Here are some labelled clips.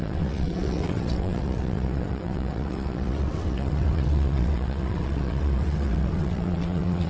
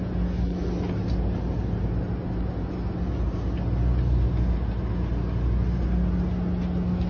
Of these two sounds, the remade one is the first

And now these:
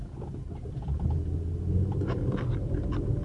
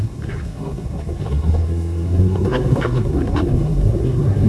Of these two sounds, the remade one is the second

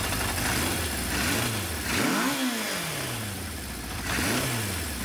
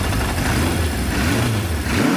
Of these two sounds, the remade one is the second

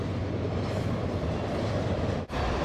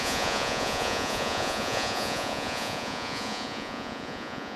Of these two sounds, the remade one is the second